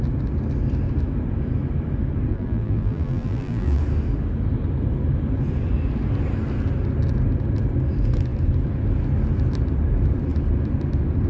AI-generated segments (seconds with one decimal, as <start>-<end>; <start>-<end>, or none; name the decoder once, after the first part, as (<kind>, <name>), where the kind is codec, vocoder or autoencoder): 2.3-3.8 (vocoder, BigVGAN v2)